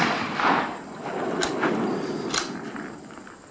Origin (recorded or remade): recorded